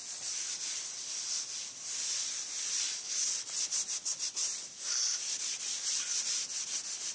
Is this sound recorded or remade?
recorded